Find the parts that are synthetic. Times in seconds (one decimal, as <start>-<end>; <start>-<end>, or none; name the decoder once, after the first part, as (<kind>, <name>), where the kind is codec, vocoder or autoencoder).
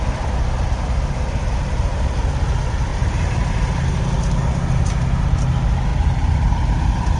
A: 2.9-3.5 (vocoder, BigVGAN v2); 5.9-7.2